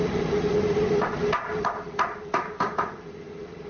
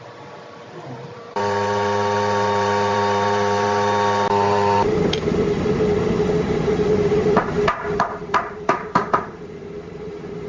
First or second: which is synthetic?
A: second